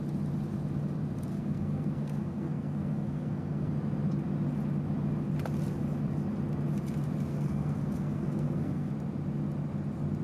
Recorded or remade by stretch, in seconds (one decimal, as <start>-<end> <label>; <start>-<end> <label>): 0.0-1.3 recorded; 1.3-3.7 remade; 3.7-7.3 recorded; 7.3-8.9 remade; 8.9-10.2 recorded